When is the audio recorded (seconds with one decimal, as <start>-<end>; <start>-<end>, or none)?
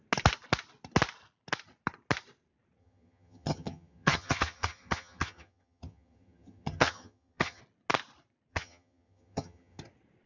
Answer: 0.0-2.8; 7.6-8.5; 9.8-10.3